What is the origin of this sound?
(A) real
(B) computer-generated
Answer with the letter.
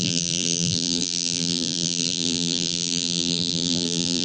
B